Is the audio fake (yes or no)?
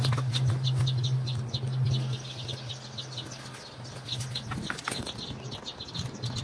no